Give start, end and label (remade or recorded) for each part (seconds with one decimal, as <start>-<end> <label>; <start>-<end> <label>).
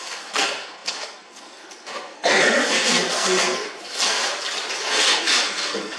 0.0-4.2 remade; 4.2-4.8 recorded; 4.8-6.0 remade